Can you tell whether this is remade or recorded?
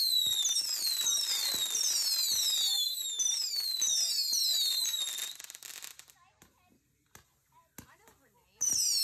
recorded